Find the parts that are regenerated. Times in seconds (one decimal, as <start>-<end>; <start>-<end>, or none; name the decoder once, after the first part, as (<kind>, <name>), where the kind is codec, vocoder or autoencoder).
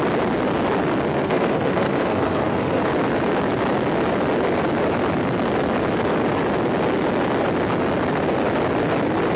1.1-2.8 (codec, SNAC)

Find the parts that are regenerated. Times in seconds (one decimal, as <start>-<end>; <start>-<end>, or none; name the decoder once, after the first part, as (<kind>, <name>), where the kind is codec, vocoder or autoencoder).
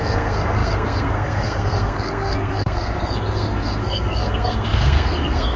0.0-5.6 (codec, SNAC)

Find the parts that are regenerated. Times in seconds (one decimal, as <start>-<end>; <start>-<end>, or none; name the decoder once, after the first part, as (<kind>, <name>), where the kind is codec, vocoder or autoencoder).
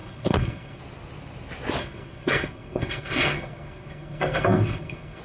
0.0-0.8 (codec, SNAC); 1.8-5.2